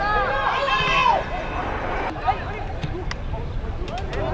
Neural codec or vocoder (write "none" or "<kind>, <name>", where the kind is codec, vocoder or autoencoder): none